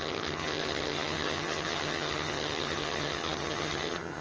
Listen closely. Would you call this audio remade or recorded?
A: remade